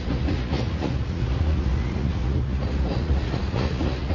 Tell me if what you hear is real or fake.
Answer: fake